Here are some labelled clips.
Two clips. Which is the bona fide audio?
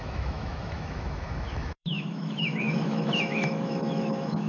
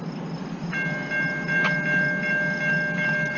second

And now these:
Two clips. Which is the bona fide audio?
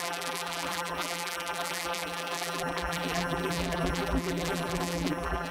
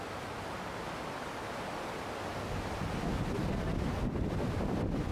second